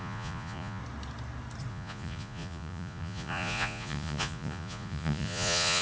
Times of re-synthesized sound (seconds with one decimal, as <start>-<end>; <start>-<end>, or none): 0.0-0.8; 1.7-5.8